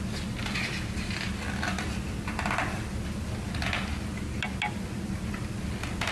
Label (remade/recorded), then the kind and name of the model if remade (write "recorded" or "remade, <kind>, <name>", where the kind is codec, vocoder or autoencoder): recorded